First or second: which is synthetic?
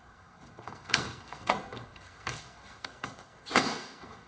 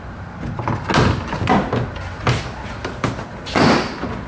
first